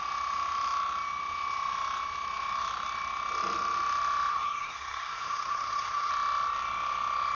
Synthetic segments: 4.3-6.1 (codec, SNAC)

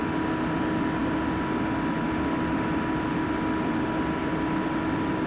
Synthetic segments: none

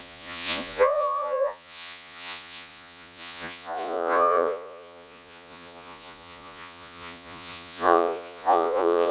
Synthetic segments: 0.0-9.1 (vocoder, Vocos)